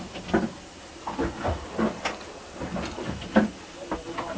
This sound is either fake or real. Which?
real